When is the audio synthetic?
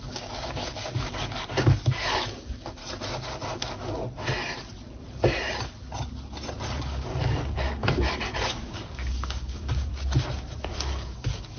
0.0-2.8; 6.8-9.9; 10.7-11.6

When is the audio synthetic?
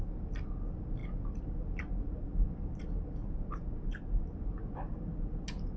3.2-4.3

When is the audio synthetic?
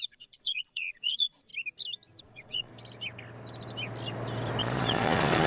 0.0-1.5; 2.2-2.7; 4.6-5.5